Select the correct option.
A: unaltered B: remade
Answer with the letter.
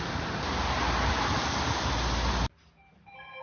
A